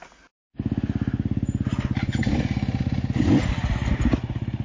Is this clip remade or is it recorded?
recorded